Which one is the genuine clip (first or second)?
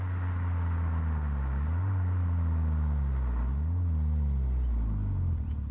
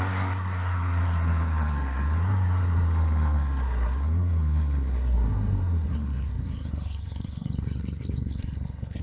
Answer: first